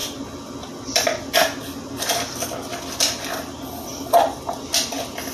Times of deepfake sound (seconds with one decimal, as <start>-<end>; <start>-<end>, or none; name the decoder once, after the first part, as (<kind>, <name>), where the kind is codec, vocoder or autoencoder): none